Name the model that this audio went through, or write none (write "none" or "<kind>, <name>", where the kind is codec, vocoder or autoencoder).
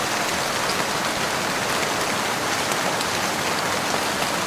none